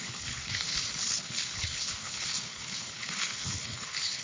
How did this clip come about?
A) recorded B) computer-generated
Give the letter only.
B